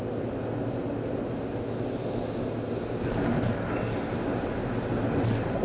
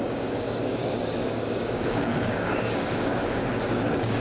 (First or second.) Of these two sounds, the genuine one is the first